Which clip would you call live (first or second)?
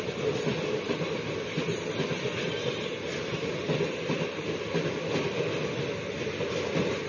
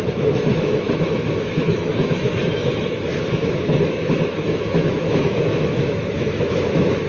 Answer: first